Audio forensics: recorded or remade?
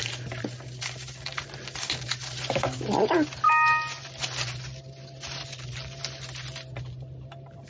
recorded